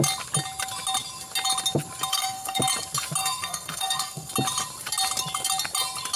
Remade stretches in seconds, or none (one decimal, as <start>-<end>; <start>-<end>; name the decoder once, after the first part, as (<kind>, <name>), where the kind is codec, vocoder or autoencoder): 2.1-2.6 (codec, SNAC); 3.2-4.3